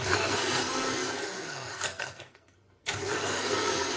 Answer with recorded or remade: remade